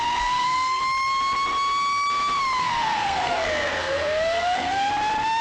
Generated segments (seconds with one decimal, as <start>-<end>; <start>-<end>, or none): 0.0-0.8; 2.6-4.9